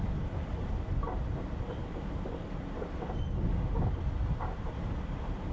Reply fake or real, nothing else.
real